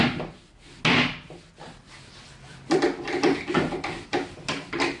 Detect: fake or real real